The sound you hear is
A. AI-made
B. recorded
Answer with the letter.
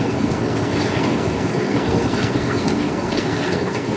A